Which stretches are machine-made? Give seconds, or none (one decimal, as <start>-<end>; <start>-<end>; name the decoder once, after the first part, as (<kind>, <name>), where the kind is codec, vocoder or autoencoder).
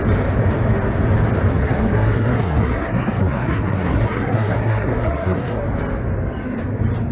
1.5-5.6 (codec, SNAC)